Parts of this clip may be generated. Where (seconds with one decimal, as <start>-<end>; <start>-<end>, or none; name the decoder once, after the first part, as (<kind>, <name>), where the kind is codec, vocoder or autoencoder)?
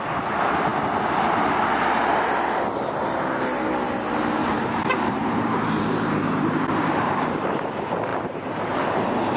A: 4.4-7.4 (vocoder, BigVGAN v2); 8.1-9.0